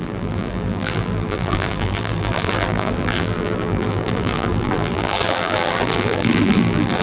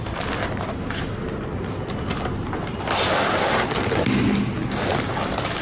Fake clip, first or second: first